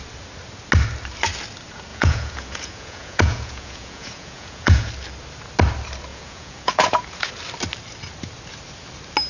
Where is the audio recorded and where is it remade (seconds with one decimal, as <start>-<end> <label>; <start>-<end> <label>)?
0.0-1.9 recorded; 1.9-4.9 remade; 4.9-6.1 recorded; 6.1-7.3 remade; 7.3-9.3 recorded